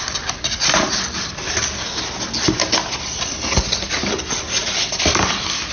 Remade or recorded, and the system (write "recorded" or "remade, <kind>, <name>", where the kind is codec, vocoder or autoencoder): remade, vocoder, BigVGAN v2